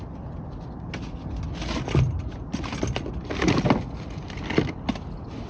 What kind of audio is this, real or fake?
real